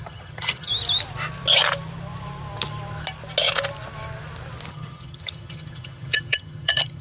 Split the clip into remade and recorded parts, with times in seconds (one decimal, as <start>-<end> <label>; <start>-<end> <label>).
0.0-0.7 remade; 0.7-4.7 recorded; 4.7-7.0 remade